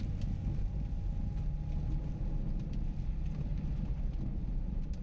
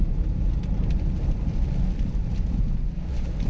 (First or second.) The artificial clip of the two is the second